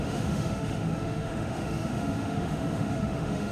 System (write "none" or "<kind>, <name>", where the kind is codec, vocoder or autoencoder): autoencoder, DAC-VAE